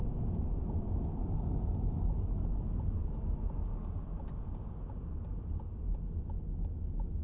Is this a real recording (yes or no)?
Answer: yes